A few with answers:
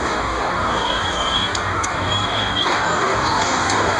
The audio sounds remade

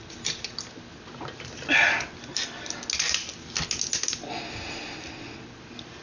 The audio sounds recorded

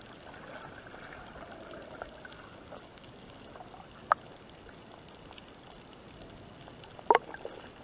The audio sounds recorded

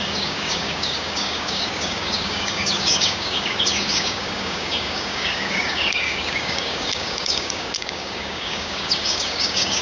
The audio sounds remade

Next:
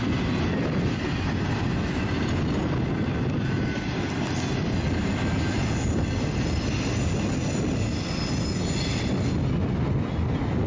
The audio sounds recorded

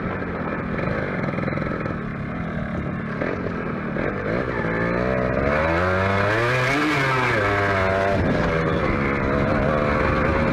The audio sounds recorded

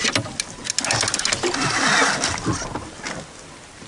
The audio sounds recorded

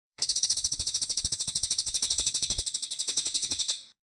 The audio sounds remade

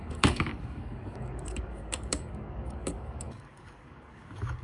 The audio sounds remade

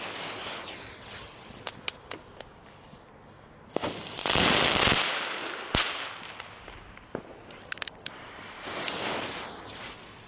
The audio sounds recorded